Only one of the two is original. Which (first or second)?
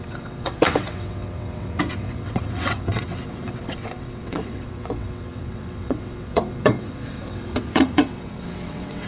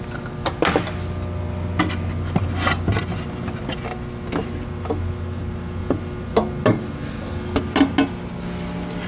second